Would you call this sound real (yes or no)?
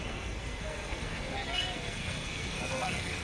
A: no